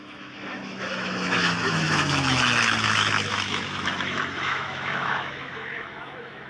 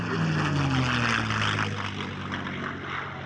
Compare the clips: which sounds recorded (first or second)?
second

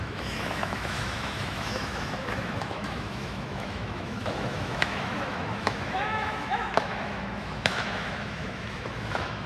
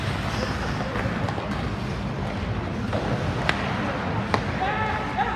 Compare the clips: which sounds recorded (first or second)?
second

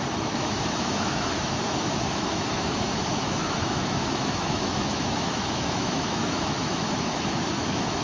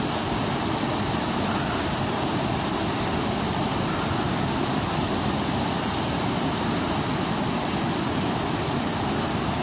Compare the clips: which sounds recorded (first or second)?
second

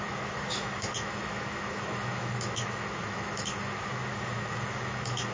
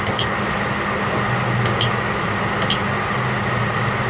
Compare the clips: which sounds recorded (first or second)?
second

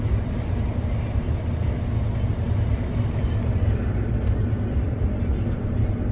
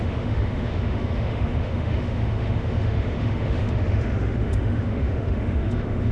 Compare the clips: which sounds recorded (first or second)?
first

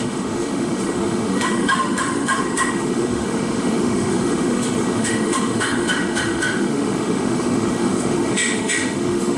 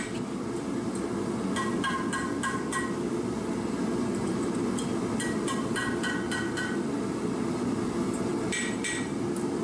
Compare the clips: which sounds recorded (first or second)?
second